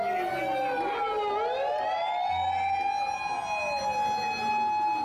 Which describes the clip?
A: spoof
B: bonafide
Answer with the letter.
B